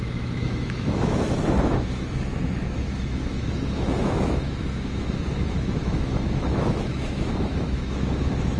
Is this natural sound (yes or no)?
no